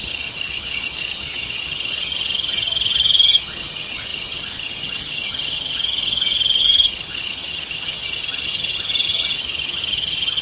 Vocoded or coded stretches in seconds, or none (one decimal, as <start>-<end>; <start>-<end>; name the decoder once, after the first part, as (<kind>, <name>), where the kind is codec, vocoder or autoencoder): 0.0-10.4 (vocoder, HiFi-GAN)